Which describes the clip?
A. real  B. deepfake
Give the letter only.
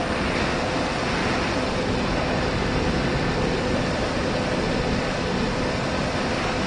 A